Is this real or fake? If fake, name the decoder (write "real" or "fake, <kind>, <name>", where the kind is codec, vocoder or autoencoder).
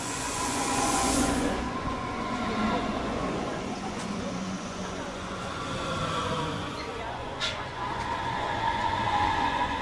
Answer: fake, vocoder, Vocos